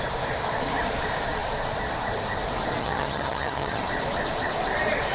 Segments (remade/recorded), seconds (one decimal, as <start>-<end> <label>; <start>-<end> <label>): 0.0-2.8 recorded; 2.8-3.8 remade; 3.8-5.1 recorded